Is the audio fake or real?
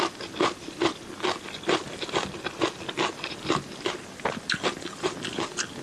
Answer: real